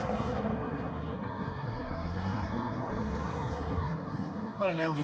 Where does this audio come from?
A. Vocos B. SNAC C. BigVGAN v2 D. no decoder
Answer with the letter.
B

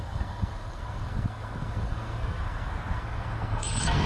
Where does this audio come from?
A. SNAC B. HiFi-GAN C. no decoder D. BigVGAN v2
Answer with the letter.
A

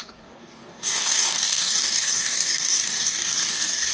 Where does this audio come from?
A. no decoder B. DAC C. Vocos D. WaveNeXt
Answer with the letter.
B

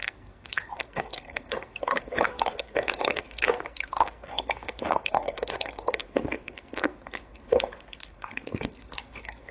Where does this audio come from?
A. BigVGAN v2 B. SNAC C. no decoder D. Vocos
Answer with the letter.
B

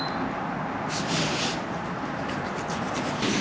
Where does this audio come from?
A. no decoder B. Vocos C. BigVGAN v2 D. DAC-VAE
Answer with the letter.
A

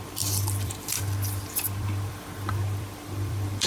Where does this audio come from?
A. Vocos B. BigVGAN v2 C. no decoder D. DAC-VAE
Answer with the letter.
B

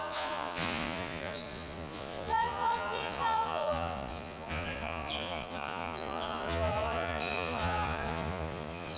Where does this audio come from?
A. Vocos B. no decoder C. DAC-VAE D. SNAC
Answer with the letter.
A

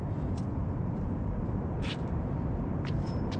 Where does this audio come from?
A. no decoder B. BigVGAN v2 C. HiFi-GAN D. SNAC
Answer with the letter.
B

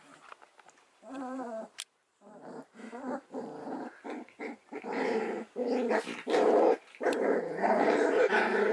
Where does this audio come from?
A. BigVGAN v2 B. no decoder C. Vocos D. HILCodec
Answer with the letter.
A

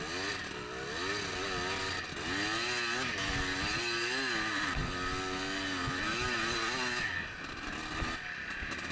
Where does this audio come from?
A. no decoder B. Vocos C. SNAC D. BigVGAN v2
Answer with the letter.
A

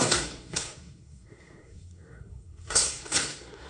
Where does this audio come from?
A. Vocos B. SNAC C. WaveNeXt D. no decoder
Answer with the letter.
B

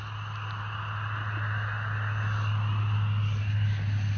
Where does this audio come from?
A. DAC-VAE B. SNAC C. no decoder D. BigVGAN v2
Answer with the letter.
C